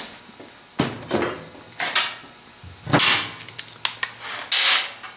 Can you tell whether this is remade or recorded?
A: recorded